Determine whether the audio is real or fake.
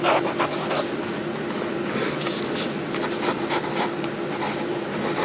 real